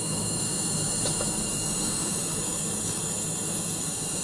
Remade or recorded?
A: remade